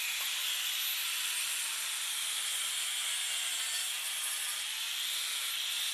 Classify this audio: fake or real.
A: real